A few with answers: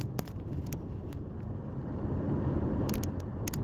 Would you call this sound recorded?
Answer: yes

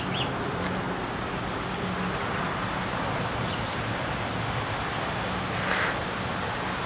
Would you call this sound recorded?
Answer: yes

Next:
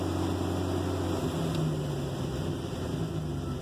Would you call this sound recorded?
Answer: yes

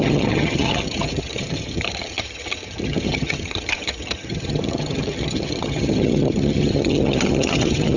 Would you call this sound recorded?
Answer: no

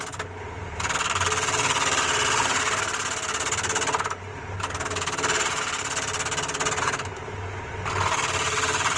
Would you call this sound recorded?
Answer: yes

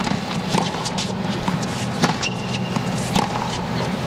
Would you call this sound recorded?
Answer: yes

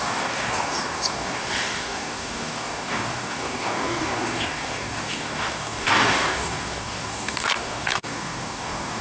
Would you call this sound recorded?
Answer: no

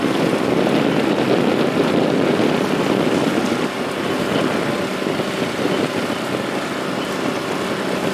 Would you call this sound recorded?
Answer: yes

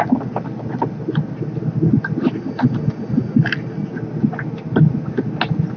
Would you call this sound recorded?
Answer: yes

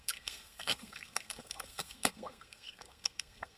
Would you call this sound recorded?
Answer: no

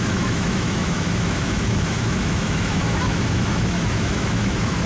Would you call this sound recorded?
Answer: no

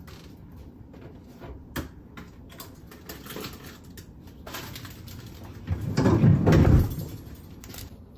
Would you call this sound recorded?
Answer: yes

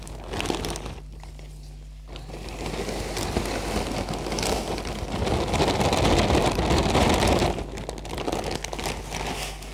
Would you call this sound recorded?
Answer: yes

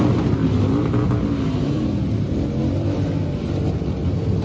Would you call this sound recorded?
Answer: yes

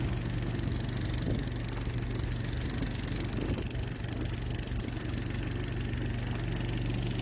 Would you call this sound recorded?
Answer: yes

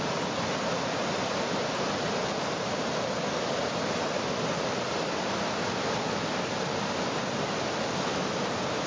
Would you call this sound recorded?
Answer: yes